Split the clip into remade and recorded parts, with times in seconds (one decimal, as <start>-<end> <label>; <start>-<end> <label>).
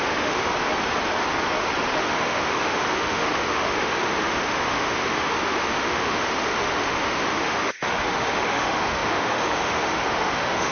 0.0-0.5 remade; 0.5-2.0 recorded; 2.0-10.7 remade